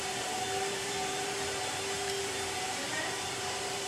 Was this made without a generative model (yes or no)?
no